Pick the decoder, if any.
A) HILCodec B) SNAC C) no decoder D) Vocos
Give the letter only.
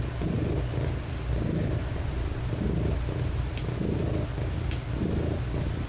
C